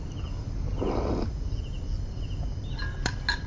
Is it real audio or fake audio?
real